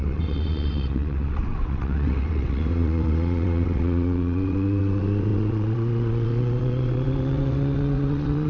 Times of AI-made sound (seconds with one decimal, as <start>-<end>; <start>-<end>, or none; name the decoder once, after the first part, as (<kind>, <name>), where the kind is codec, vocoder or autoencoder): 0.0-8.5 (vocoder, WaveNeXt)